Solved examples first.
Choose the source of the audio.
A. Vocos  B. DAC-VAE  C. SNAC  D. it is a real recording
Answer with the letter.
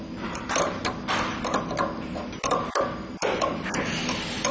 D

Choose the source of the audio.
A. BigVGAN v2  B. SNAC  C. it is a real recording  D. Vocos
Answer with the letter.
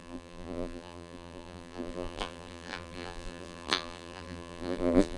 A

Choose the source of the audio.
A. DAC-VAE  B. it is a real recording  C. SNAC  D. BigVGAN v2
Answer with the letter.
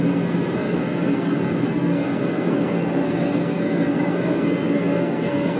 C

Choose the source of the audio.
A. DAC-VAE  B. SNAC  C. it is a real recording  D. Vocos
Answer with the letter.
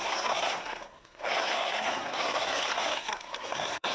B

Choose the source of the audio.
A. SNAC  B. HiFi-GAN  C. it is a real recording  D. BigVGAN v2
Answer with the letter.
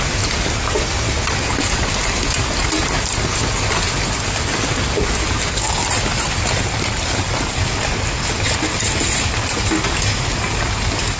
C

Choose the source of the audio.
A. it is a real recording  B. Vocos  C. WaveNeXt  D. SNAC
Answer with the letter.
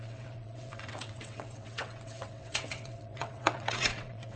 C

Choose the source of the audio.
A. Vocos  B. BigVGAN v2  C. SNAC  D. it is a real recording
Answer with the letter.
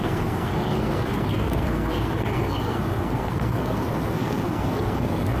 C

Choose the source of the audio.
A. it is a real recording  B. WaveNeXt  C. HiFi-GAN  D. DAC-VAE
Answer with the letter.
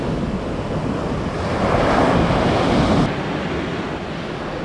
A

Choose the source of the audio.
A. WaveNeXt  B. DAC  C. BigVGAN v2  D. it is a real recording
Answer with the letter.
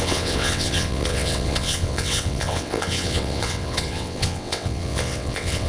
A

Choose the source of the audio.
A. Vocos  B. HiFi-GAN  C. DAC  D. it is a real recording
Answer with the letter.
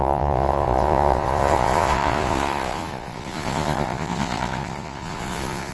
A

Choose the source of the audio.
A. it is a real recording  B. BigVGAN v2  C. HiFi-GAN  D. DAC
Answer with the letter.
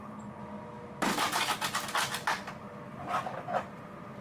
A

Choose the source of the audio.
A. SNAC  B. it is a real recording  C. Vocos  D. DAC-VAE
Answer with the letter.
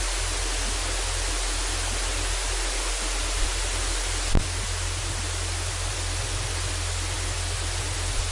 B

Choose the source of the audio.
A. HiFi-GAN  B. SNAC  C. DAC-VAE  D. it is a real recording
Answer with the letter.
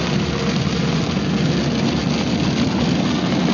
D